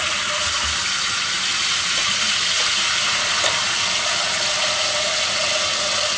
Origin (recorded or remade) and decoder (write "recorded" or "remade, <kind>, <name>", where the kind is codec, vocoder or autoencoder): recorded